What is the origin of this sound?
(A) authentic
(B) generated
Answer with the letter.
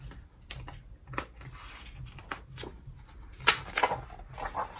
A